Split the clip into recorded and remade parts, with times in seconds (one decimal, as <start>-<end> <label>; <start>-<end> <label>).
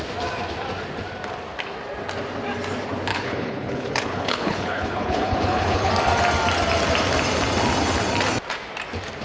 0.0-3.1 recorded; 3.1-5.9 remade; 5.9-9.2 recorded